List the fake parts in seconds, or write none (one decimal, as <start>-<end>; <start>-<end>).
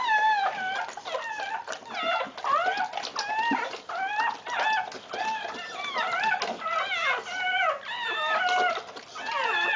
none